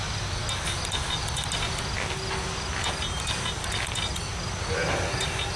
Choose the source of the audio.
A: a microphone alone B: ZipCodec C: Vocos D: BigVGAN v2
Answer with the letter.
A